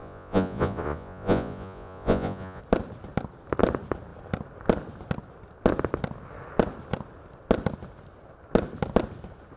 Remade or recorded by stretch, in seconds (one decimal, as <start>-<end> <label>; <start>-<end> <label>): 0.0-2.6 remade; 2.6-9.6 recorded